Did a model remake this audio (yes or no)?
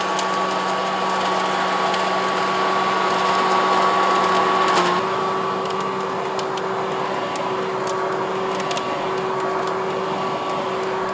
no